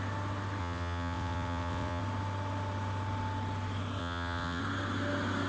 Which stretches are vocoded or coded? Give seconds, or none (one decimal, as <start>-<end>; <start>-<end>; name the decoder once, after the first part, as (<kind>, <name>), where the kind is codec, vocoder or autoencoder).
0.6-2.0 (vocoder, WaveNeXt); 4.0-4.6

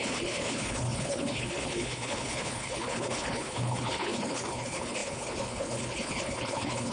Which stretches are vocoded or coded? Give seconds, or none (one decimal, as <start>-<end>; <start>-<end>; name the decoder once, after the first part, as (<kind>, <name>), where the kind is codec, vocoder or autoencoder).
0.0-6.9 (codec, HILCodec)

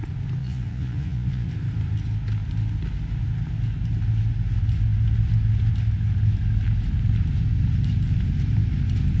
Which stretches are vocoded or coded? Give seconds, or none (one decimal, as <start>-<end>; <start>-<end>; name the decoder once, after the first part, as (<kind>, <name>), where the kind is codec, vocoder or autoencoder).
0.4-1.5 (vocoder, Vocos)

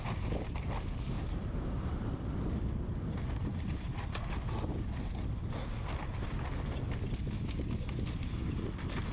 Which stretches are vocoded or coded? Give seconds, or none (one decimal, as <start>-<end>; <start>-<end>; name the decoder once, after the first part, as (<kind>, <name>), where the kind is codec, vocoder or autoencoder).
none

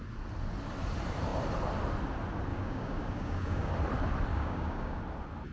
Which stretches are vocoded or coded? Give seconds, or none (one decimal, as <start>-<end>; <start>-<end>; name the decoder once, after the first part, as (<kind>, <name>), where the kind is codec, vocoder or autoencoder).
2.5-3.7 (codec, DAC); 4.3-5.0

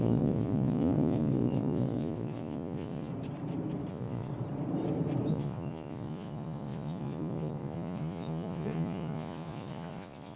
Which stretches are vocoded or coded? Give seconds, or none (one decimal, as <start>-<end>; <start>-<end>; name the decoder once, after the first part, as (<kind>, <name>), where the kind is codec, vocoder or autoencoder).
0.0-3.1 (vocoder, Vocos); 3.9-4.3; 5.3-10.4

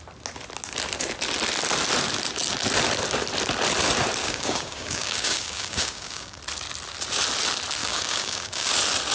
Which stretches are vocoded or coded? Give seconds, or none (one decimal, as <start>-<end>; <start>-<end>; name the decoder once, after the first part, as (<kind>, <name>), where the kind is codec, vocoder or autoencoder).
4.2-6.4 (codec, DAC); 7.8-8.7

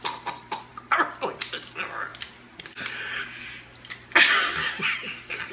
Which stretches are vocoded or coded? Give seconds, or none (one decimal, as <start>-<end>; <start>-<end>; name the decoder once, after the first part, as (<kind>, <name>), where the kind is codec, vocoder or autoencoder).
none